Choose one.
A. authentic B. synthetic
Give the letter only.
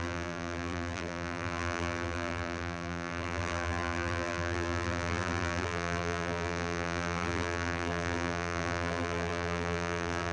B